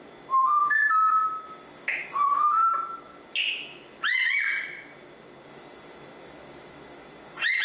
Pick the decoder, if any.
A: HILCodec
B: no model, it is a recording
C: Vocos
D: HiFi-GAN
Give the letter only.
B